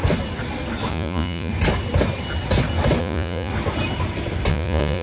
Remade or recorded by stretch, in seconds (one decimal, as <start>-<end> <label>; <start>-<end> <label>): 0.0-0.9 recorded; 0.9-1.5 remade; 1.5-3.0 recorded; 3.0-3.5 remade; 3.5-4.5 recorded; 4.5-5.0 remade